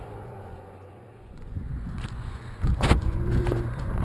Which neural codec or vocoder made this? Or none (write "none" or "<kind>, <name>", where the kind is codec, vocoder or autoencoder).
vocoder, Vocos